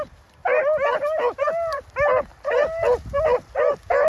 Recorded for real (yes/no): yes